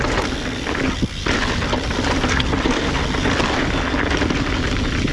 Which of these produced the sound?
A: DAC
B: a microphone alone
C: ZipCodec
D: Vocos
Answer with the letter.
B